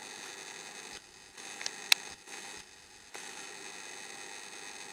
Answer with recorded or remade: recorded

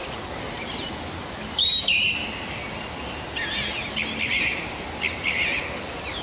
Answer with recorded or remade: recorded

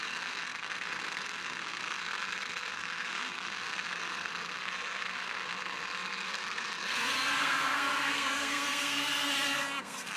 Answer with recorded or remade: remade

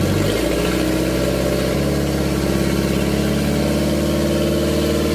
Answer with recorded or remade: recorded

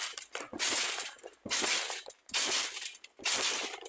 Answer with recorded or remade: recorded